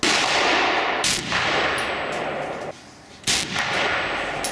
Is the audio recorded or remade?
recorded